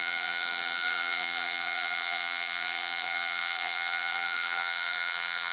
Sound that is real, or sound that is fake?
fake